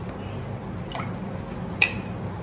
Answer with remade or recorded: recorded